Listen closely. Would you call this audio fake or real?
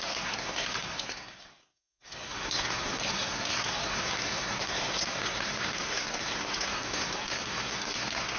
fake